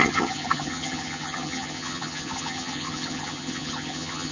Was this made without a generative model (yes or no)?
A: no